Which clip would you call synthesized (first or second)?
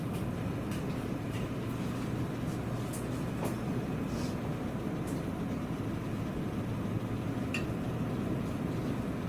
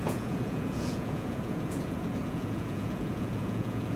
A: second